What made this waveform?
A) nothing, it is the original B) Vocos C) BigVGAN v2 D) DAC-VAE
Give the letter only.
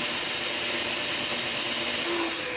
A